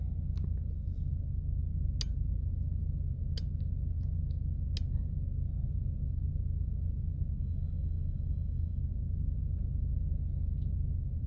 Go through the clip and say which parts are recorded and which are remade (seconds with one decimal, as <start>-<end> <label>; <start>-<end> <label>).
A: 0.0-7.4 recorded; 7.4-8.8 remade; 8.8-11.3 recorded